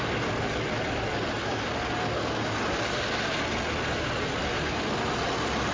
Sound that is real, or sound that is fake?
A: real